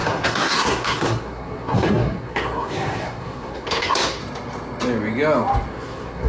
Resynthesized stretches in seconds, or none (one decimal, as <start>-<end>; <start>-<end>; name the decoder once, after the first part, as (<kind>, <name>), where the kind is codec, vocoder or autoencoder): 0.0-4.2 (codec, SNAC); 5.7-6.3